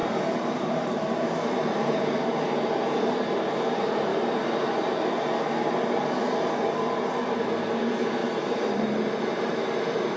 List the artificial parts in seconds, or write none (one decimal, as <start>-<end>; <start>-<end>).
0.0-4.1; 7.8-10.2